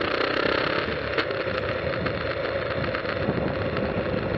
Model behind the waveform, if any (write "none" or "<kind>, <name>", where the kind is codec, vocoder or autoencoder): none